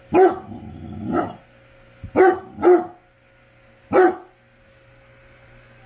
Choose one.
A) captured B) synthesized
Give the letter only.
A